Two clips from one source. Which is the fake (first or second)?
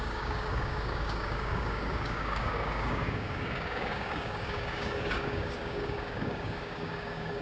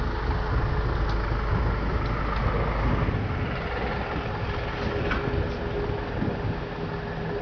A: first